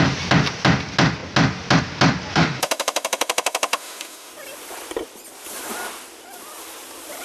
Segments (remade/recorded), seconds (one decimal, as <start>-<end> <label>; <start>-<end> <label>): 0.0-2.3 recorded; 2.3-4.3 remade; 4.3-7.2 recorded